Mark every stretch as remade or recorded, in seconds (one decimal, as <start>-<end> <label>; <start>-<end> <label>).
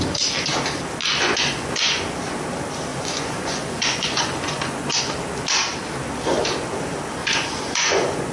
0.0-1.0 recorded; 1.0-2.0 remade; 2.0-2.9 recorded; 2.9-5.0 remade; 5.0-7.2 recorded; 7.2-8.3 remade